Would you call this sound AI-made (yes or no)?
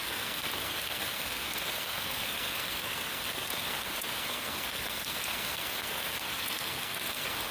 yes